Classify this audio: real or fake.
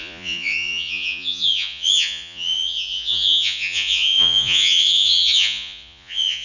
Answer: fake